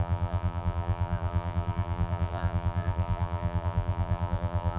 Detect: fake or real fake